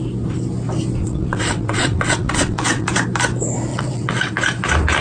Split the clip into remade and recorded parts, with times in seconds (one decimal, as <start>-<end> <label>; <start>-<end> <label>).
0.0-1.0 recorded; 1.0-2.9 remade; 2.9-3.7 recorded; 3.7-4.3 remade; 4.3-5.0 recorded